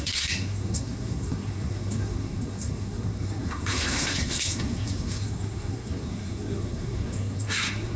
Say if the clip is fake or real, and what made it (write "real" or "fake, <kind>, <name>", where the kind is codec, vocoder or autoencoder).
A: fake, codec, SNAC